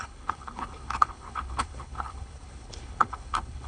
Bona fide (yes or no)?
no